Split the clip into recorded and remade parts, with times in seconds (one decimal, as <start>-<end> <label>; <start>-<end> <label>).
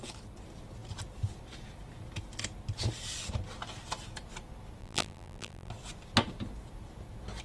0.0-4.8 recorded; 4.8-5.7 remade; 5.7-7.4 recorded